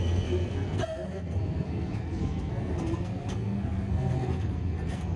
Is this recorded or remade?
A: remade